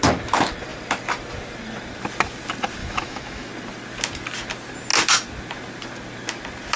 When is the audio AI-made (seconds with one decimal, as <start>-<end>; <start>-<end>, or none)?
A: 2.8-3.5